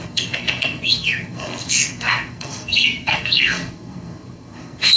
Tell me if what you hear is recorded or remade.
remade